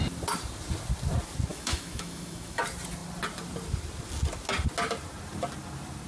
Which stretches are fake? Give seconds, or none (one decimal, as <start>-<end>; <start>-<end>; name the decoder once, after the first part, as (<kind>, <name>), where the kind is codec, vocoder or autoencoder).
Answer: 1.5-2.6 (autoencoder, DAC-VAE)